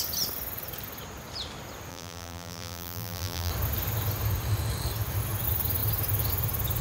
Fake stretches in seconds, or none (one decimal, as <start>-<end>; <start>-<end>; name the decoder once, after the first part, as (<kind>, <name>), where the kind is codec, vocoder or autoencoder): 1.9-3.5 (vocoder, BigVGAN v2)